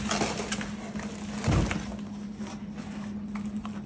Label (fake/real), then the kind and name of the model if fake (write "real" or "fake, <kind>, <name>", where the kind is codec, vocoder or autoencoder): real